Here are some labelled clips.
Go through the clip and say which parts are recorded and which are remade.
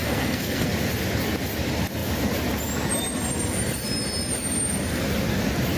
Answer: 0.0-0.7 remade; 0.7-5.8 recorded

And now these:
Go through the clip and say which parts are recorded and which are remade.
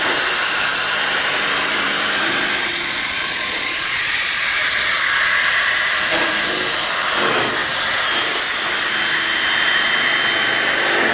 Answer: 0.0-2.7 recorded; 2.7-4.4 remade; 4.4-11.1 recorded